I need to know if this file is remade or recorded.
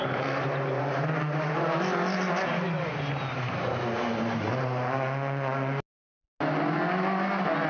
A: recorded